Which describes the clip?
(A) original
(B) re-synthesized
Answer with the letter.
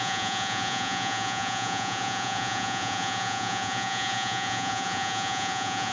B